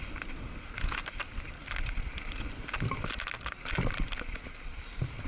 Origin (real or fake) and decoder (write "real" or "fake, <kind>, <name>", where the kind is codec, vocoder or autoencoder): real